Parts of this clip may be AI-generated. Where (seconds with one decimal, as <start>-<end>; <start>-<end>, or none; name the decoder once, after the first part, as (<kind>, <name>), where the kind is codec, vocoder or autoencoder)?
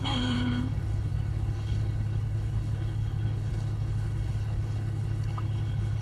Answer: 0.0-6.0 (codec, HILCodec)